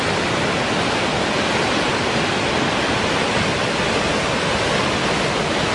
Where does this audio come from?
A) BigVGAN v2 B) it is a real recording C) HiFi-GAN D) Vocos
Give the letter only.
B